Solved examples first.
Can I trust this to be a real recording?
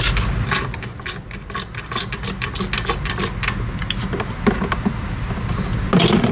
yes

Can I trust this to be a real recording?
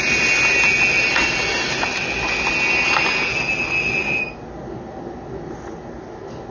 yes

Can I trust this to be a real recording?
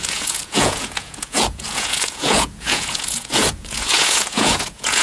no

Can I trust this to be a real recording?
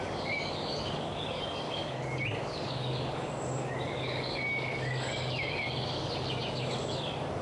no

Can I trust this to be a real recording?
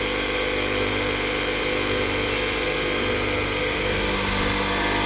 yes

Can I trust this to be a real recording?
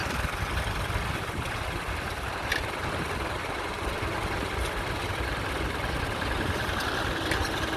no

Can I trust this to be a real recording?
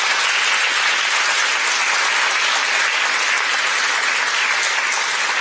yes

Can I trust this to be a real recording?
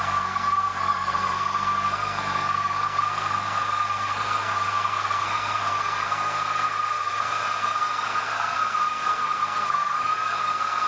no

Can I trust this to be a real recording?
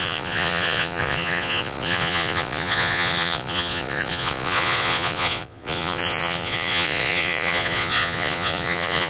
no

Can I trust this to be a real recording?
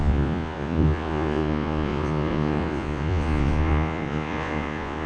no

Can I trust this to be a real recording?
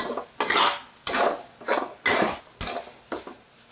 yes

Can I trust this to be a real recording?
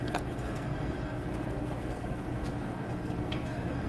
no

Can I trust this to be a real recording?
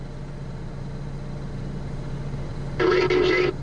yes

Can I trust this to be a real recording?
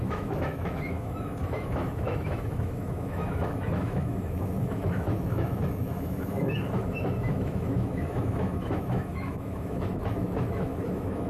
no